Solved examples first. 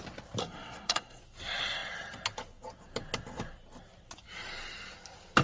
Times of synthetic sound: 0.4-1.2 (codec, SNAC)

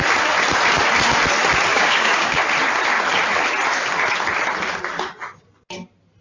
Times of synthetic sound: 1.7-2.4 (codec, DAC)

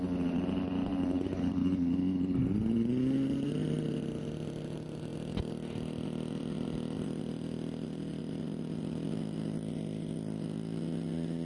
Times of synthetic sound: none

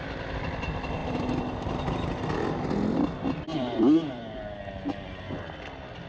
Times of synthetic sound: 3.5-5.3 (vocoder, BigVGAN v2)

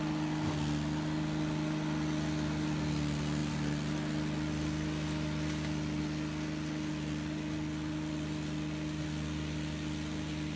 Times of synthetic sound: none

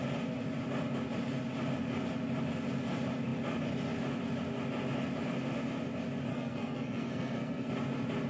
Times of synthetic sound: 6.3-7.7 (codec, SNAC)

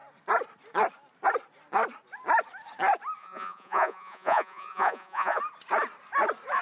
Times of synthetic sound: 3.2-5.4 (vocoder, Vocos)